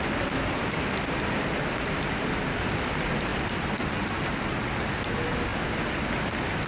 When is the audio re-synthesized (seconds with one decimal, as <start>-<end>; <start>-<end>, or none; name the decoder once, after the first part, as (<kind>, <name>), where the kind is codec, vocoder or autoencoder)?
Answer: none